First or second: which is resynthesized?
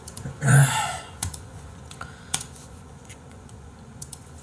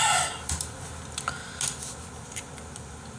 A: first